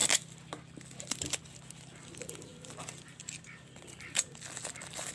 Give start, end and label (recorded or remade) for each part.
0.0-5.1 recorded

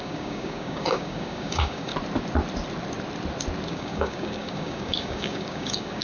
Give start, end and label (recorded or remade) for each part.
0.0-1.9 remade; 1.9-3.7 recorded; 3.7-6.0 remade

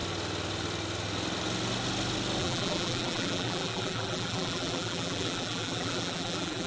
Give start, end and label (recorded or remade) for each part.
0.0-2.4 recorded; 2.4-6.7 remade

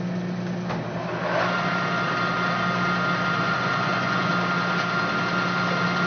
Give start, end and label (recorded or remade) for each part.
0.0-3.4 recorded; 3.4-4.3 remade; 4.3-6.1 recorded

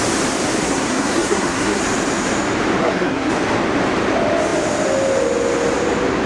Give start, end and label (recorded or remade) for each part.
0.0-0.6 recorded; 0.6-1.8 remade; 1.8-2.8 recorded; 2.8-3.3 remade; 3.3-6.3 recorded

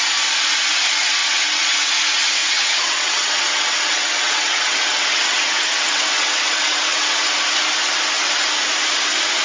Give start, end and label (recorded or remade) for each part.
0.0-1.2 recorded; 1.2-1.9 remade; 1.9-2.4 recorded; 2.4-7.4 remade; 7.4-9.4 recorded